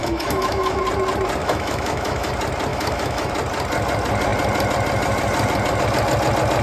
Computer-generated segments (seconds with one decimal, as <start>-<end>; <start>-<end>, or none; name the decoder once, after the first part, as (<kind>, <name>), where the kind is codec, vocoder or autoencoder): 0.0-0.8 (autoencoder, DAC-VAE); 1.4-2.3; 2.7-3.3